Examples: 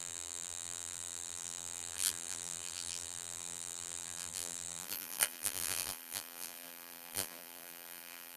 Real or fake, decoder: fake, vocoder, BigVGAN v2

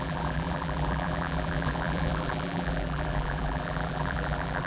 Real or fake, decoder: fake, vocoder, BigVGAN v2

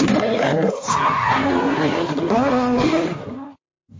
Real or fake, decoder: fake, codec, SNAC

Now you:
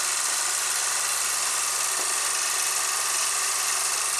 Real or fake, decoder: real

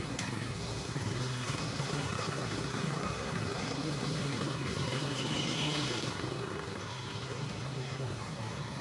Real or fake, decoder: fake, codec, SNAC